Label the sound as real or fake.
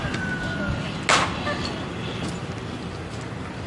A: real